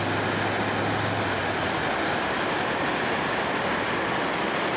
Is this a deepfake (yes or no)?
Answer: no